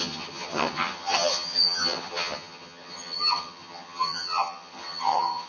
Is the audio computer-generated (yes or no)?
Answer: yes